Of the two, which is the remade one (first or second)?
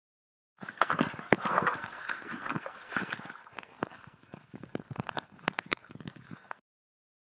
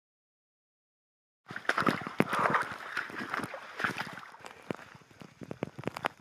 first